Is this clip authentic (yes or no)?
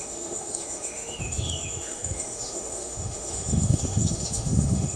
no